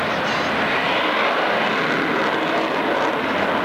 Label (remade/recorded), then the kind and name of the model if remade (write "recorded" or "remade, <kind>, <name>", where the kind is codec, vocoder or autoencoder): recorded